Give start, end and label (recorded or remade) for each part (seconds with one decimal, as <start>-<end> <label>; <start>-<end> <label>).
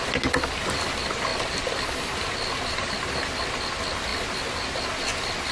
0.0-1.3 recorded; 1.3-2.3 remade; 2.3-5.5 recorded